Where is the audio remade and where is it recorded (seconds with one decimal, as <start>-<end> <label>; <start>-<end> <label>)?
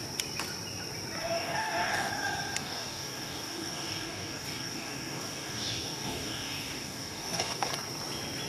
0.0-1.2 recorded; 1.2-2.1 remade; 2.1-2.6 recorded; 2.6-7.7 remade; 7.7-8.5 recorded